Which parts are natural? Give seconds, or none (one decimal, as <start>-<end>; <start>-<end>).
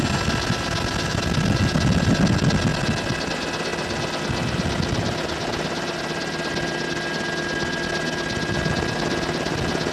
0.0-9.9